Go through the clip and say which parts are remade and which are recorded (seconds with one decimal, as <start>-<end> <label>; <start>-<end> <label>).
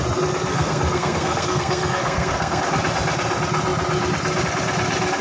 0.0-0.5 recorded; 0.5-2.6 remade; 2.6-5.2 recorded